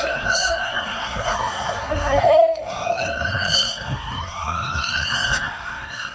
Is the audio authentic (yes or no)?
no